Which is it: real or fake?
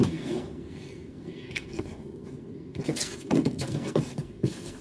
fake